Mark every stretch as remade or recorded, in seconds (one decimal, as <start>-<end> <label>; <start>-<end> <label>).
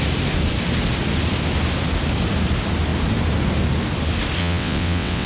0.0-4.4 recorded; 4.4-5.3 remade